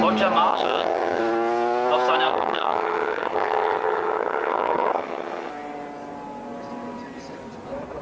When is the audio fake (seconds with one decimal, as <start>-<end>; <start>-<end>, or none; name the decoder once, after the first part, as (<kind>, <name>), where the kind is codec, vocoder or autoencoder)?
0.5-1.2 (vocoder, HiFi-GAN); 2.3-5.5